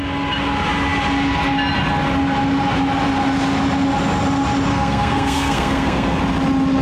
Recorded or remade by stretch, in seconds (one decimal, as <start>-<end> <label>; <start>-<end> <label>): 0.0-4.7 recorded; 4.7-6.2 remade; 6.2-6.8 recorded